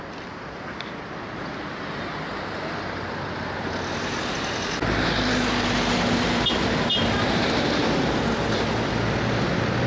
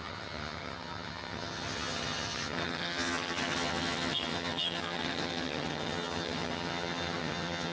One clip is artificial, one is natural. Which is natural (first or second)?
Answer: first